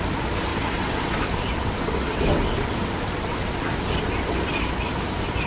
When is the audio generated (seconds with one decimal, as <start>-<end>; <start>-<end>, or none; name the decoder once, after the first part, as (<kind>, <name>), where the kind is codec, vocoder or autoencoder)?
0.5-3.8 (vocoder, WaveNeXt)